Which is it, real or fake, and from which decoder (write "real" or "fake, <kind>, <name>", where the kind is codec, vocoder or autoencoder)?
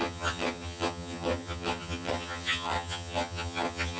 fake, vocoder, HiFi-GAN